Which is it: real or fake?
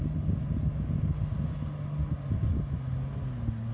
real